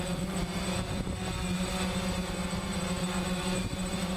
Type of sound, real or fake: fake